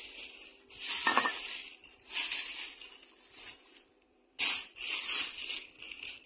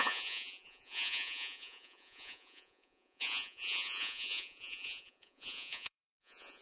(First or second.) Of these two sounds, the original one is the first